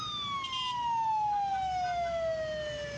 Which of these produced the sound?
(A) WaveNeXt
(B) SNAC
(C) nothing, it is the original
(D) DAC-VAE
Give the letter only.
C